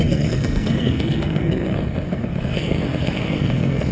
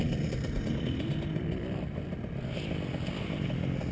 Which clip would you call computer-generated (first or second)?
first